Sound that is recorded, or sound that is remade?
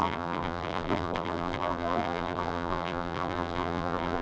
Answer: remade